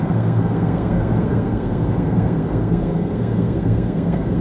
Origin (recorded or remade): remade